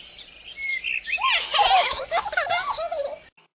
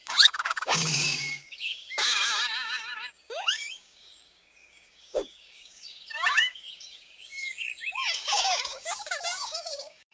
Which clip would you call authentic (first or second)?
first